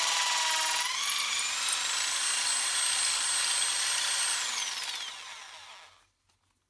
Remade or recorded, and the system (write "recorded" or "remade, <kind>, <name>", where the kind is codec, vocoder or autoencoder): recorded